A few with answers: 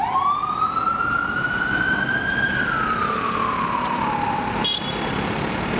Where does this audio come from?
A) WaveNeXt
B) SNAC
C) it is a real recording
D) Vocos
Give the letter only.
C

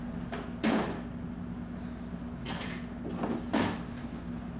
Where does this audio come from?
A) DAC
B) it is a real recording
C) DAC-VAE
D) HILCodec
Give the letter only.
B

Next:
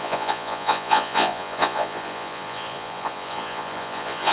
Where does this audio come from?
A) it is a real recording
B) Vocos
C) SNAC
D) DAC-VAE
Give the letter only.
B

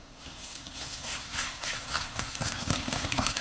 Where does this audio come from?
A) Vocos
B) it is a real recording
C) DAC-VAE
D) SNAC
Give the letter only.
D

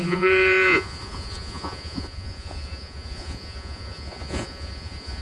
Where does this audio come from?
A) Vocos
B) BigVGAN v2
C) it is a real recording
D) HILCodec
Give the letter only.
A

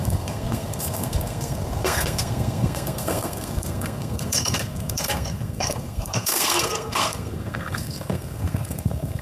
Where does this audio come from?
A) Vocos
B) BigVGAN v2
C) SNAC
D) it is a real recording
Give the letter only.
C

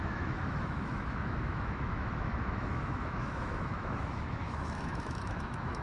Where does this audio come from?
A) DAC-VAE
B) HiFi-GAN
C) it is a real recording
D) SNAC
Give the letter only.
A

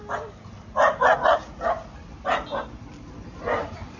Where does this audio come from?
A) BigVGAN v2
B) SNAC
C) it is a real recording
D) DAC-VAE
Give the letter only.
C